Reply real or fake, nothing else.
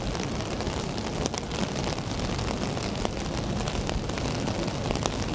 real